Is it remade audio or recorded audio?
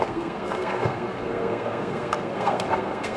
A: remade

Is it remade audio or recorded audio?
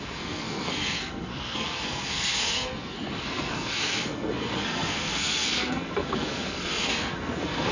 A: remade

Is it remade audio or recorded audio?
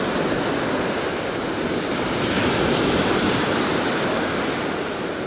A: recorded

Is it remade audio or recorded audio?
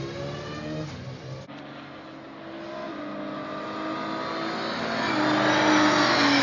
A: recorded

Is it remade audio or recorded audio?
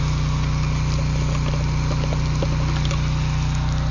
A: recorded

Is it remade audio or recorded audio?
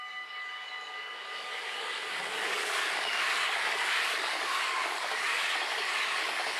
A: remade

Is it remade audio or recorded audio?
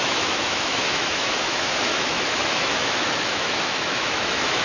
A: remade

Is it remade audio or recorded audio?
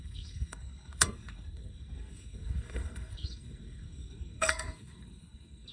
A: remade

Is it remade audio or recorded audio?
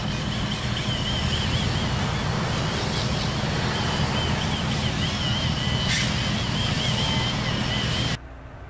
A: recorded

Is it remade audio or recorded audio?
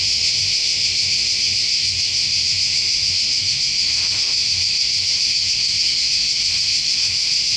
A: remade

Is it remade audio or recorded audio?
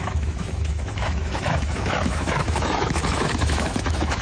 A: remade